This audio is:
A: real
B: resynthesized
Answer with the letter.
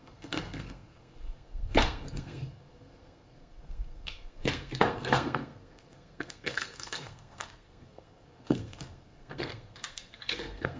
B